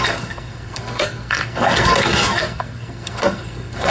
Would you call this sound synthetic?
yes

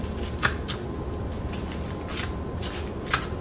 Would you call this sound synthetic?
no